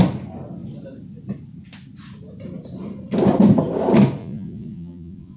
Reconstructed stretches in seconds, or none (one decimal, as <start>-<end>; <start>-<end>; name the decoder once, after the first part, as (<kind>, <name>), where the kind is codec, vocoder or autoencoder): 4.2-5.4 (vocoder, Vocos)